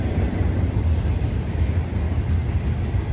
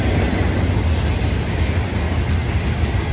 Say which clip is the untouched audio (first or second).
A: second